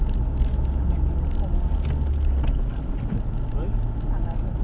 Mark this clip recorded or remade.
recorded